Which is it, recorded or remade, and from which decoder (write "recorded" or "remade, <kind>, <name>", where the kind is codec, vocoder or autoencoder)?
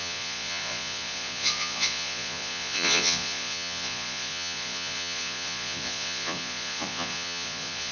remade, vocoder, Vocos